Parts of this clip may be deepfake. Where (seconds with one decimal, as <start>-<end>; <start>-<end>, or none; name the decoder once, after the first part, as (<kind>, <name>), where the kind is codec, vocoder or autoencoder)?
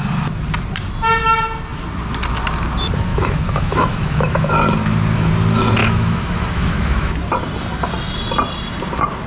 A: 3.1-4.5 (autoencoder, DAC-VAE); 5.8-7.1